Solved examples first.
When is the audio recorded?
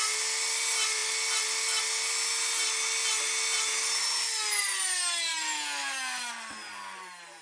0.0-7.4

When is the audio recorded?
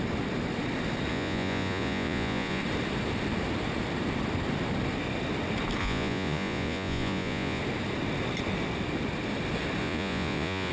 0.0-1.1; 2.6-5.8; 7.6-9.8